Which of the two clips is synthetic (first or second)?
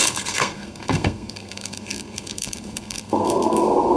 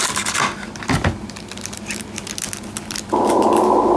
first